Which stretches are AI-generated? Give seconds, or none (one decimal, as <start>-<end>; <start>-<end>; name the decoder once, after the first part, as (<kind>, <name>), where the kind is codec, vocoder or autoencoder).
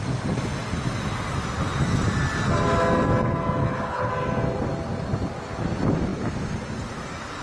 3.6-4.1 (codec, HILCodec)